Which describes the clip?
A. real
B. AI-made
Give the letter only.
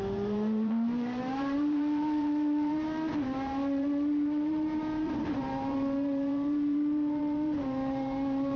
B